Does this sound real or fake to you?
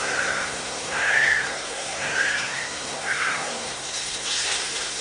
fake